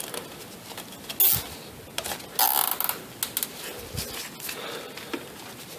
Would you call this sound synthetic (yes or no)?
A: no